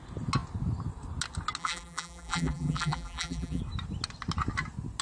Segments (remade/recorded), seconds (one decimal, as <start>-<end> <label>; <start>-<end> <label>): 0.0-1.6 recorded; 1.6-3.6 remade; 3.6-5.0 recorded